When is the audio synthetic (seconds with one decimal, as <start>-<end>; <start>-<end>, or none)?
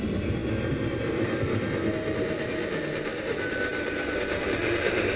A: none